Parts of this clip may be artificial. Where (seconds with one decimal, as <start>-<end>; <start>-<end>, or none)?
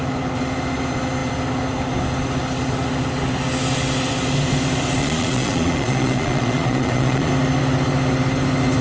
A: 5.0-7.3